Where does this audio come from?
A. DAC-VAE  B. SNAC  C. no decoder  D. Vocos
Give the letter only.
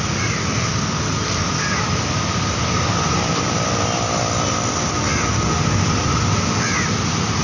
C